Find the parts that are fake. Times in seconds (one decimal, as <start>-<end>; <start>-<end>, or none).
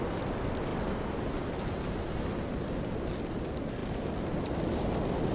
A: none